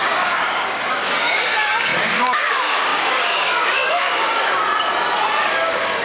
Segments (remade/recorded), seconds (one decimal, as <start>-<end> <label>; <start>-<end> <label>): 0.0-4.6 remade; 4.6-5.4 recorded; 5.4-6.0 remade